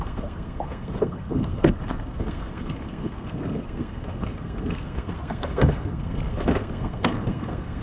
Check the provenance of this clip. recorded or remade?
remade